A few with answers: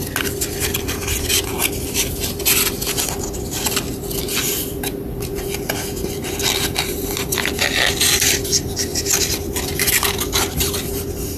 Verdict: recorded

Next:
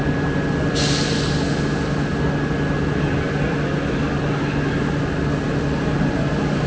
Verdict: recorded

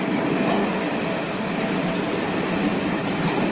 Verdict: recorded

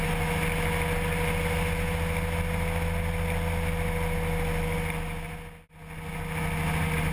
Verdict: recorded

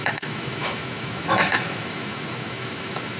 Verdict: remade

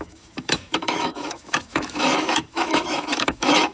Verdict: remade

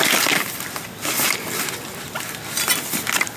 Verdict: recorded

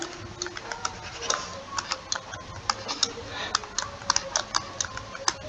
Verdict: recorded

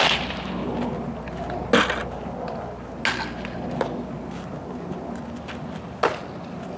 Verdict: recorded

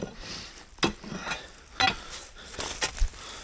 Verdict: recorded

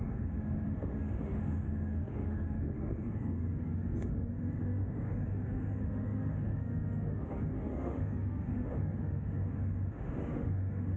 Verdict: remade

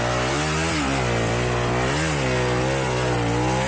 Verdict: recorded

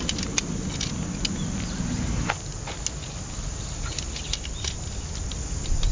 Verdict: recorded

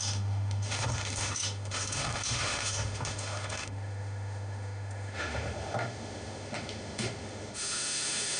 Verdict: remade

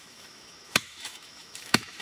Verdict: remade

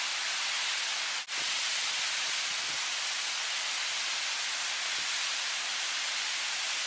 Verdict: recorded